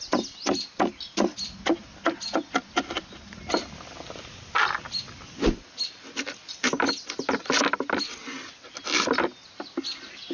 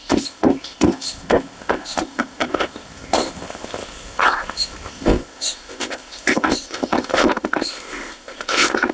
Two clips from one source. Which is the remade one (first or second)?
second